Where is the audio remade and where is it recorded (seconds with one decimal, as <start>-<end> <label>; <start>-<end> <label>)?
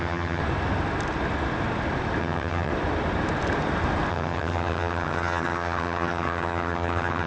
0.0-0.4 remade; 0.4-2.2 recorded; 2.2-2.7 remade; 2.7-4.1 recorded; 4.1-7.3 remade